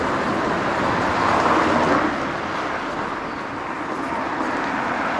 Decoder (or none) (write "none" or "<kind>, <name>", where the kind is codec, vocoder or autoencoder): none